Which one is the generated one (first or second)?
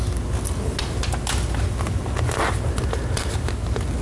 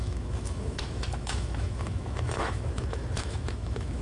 second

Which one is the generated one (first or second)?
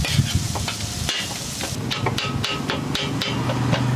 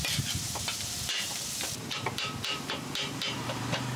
second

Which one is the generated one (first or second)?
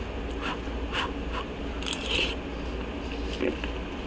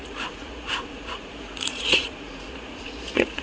second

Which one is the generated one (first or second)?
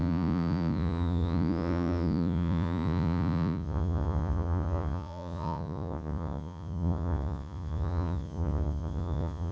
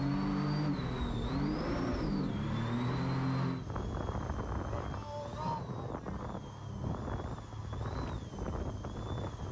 first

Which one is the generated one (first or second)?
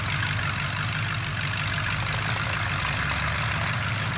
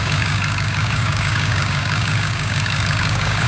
second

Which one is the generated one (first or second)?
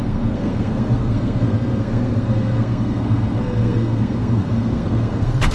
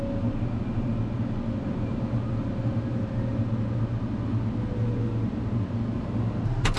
first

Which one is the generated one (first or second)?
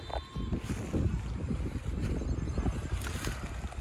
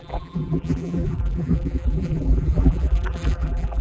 second